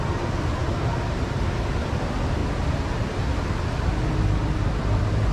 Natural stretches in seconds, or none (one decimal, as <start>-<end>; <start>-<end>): 0.0-5.3